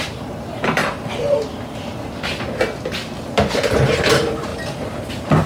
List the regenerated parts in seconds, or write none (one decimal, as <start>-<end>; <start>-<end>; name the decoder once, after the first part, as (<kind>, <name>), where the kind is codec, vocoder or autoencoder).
0.0-0.8 (vocoder, BigVGAN v2); 3.7-4.5; 5.1-5.5